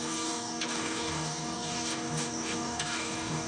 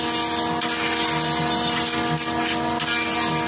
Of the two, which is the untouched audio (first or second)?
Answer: second